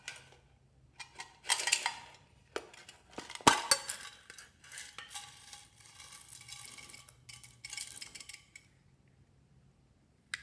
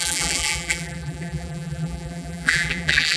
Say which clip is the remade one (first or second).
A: second